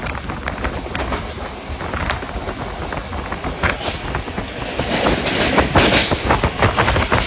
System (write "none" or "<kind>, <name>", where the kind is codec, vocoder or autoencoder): none